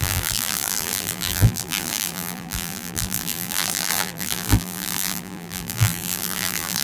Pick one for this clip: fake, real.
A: fake